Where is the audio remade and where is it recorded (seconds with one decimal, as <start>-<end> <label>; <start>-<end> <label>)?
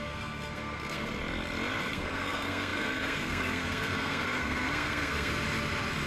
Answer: 0.0-1.2 remade; 1.2-1.8 recorded; 1.8-5.3 remade; 5.3-6.1 recorded